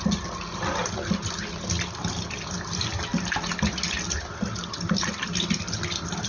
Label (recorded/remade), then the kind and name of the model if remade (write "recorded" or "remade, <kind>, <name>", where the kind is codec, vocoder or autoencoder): recorded